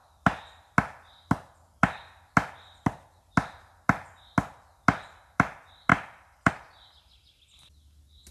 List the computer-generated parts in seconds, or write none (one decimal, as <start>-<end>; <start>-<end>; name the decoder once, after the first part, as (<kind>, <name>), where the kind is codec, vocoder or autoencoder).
5.9-6.5 (vocoder, BigVGAN v2)